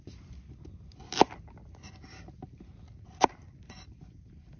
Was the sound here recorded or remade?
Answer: recorded